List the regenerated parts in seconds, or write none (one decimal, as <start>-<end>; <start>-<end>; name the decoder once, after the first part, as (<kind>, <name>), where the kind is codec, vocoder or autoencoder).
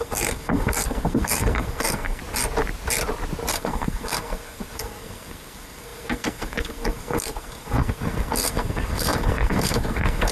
0.0-2.2 (codec, SNAC); 3.5-10.3